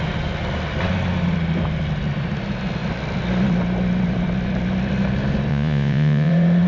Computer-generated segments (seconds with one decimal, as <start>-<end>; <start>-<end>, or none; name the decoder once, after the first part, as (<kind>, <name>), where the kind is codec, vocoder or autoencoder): 5.5-6.3 (vocoder, Vocos)